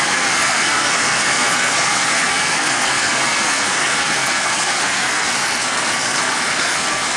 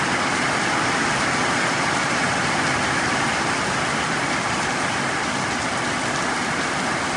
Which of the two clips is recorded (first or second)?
second